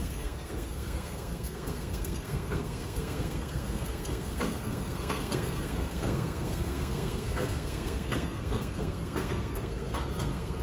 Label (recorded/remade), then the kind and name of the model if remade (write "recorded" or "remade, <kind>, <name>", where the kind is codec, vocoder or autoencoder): remade, codec, SNAC